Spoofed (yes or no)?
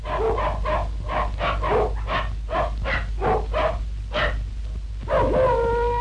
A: no